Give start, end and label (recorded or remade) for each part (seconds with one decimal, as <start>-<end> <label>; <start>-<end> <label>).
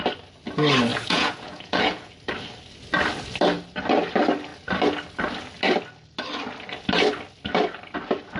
0.0-0.9 recorded; 0.9-2.1 remade; 2.1-8.4 recorded